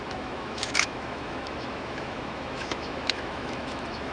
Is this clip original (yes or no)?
no